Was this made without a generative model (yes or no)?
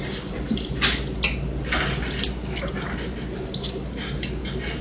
yes